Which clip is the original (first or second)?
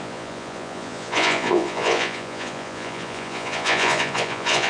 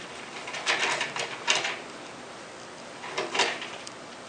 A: second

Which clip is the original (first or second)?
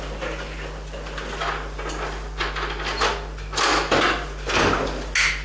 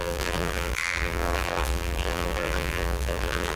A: first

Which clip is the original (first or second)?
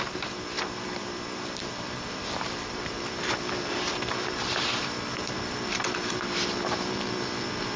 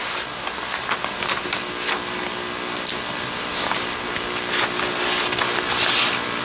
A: second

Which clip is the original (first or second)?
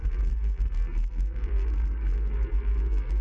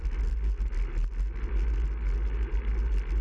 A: second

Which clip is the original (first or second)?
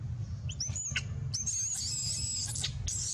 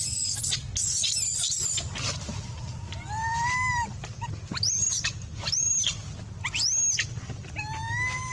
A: first